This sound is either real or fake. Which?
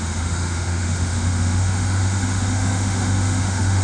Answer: fake